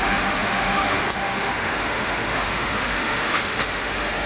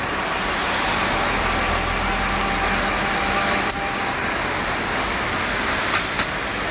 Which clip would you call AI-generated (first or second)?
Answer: first